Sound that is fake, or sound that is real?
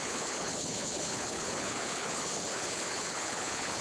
fake